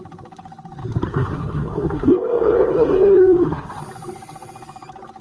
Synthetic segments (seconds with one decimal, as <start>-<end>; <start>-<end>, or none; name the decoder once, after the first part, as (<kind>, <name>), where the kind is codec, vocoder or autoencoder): 1.1-3.8 (codec, SNAC)